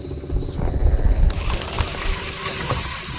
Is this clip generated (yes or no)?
no